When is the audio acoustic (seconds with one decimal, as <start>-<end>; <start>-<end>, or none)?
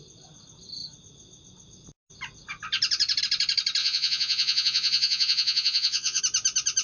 0.0-3.8; 6.2-6.8